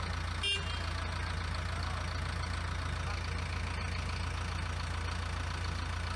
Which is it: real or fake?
real